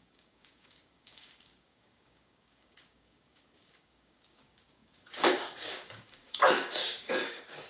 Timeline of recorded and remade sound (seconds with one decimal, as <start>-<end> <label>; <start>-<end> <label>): 0.0-7.7 remade